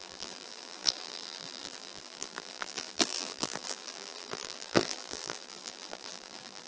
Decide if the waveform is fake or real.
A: fake